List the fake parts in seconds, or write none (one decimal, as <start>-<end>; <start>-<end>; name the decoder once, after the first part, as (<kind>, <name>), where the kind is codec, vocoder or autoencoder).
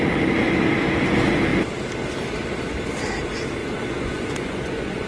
3.6-5.1 (vocoder, Vocos)